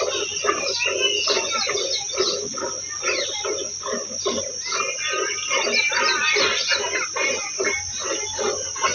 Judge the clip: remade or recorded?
recorded